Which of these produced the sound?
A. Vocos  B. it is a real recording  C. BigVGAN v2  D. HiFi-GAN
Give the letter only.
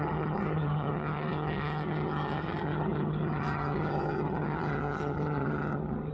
D